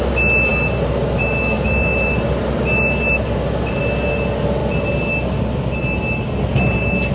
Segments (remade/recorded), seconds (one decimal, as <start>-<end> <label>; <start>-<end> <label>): 0.0-7.1 recorded